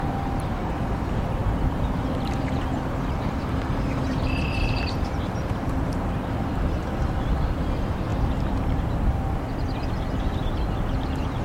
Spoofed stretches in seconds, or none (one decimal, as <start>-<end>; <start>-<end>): 1.4-6.4